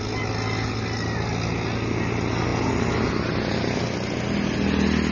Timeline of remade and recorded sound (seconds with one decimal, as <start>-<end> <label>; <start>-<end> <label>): 0.0-5.1 recorded